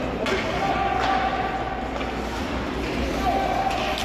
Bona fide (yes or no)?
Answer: yes